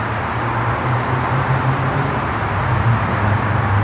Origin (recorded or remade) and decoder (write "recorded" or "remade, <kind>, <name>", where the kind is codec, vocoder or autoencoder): remade, vocoder, BigVGAN v2